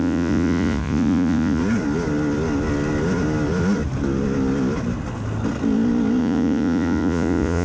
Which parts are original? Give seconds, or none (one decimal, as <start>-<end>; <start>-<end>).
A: 1.6-6.2

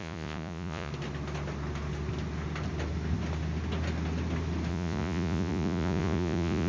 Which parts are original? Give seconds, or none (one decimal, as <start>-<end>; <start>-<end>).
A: 0.9-4.7

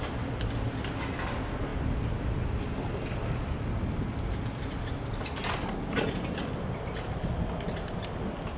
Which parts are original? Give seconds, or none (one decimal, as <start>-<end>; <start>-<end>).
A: 0.0-8.6

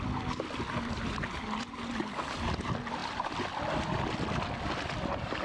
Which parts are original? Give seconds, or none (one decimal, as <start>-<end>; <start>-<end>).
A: 0.0-5.4